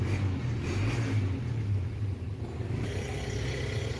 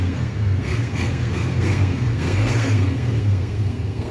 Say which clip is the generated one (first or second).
second